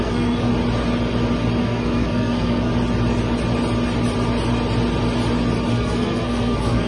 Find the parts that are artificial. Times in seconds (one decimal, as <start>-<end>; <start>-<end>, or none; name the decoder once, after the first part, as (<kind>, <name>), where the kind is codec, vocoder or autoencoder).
0.0-0.5 (codec, SNAC); 1.6-2.7; 5.7-6.9